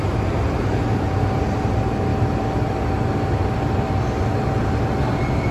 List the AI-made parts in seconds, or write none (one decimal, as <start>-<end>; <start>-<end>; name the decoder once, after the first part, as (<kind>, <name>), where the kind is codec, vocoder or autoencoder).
0.0-2.1 (vocoder, BigVGAN v2)